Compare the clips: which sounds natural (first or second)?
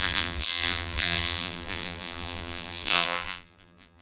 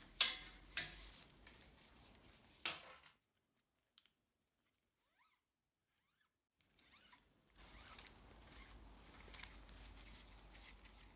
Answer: second